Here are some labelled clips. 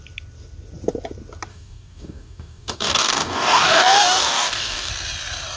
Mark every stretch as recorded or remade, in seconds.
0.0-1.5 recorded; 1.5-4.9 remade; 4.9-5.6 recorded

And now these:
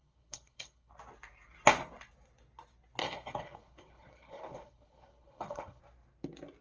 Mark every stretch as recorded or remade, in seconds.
0.0-0.9 remade; 0.9-3.0 recorded; 3.0-5.8 remade; 5.8-6.6 recorded

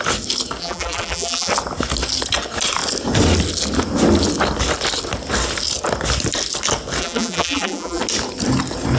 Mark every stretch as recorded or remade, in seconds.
0.0-0.6 recorded; 0.6-1.5 remade; 1.5-7.0 recorded; 7.0-8.0 remade; 8.0-9.0 recorded

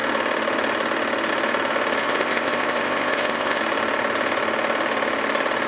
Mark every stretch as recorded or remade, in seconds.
0.0-2.0 recorded; 2.0-3.6 remade; 3.6-5.7 recorded

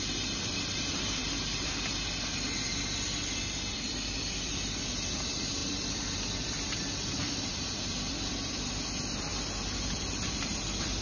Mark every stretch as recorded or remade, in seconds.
0.0-1.2 remade; 1.2-3.7 recorded; 3.7-9.3 remade; 9.3-10.0 recorded; 10.0-11.0 remade

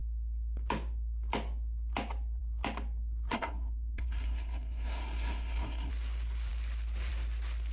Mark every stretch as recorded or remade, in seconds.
0.0-3.3 recorded; 3.3-5.9 remade; 5.9-7.7 recorded